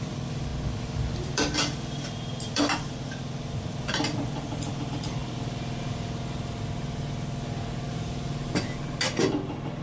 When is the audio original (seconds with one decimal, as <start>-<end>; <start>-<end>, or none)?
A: 0.5-1.1; 5.2-9.8